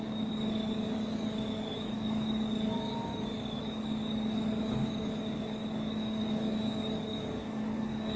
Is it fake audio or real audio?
fake